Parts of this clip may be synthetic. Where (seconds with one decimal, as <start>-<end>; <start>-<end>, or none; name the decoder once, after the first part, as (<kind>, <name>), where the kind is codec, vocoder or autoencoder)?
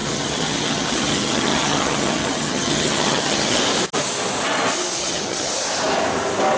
0.0-3.6 (vocoder, HiFi-GAN); 5.0-5.5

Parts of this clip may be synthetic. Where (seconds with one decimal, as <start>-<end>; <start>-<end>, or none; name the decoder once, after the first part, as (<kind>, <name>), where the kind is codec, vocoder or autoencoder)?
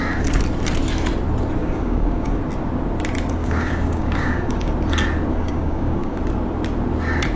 1.6-2.4 (codec, DAC); 3.4-4.7; 5.3-6.2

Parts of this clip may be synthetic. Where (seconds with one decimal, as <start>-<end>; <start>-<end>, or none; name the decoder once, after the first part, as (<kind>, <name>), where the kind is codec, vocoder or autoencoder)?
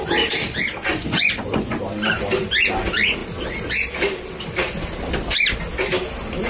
0.8-1.8 (vocoder, Vocos)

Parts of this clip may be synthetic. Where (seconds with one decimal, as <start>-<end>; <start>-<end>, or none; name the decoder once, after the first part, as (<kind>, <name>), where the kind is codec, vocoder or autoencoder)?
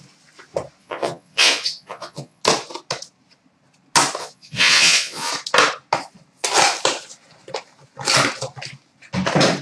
0.8-2.4 (vocoder, Vocos); 4.2-5.3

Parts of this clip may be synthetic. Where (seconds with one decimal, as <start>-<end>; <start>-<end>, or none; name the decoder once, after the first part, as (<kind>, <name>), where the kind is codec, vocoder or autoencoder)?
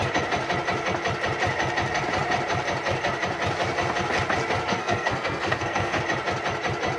4.7-6.0 (codec, SNAC)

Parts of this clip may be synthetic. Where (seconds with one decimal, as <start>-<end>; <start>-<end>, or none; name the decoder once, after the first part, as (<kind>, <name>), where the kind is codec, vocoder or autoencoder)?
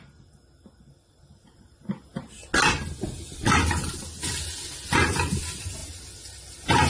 none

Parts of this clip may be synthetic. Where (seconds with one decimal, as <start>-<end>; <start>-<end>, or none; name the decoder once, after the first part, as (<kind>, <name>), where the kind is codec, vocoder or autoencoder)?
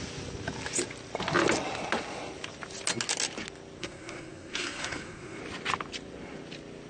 3.8-5.4 (codec, SNAC)